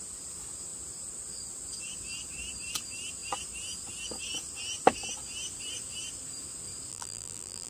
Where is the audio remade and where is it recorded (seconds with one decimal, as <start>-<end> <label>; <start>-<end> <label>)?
0.0-6.9 recorded; 6.9-7.7 remade